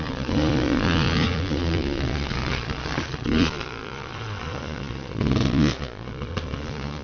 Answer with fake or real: fake